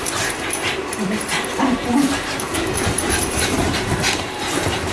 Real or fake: fake